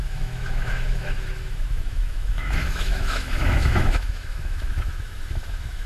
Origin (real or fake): fake